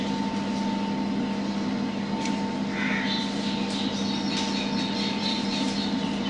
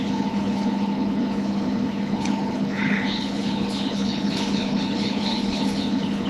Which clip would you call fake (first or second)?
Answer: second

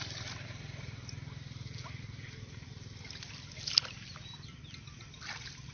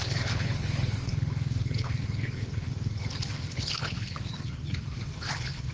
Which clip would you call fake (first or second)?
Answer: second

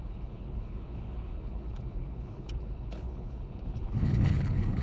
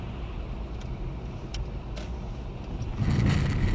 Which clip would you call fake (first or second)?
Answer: first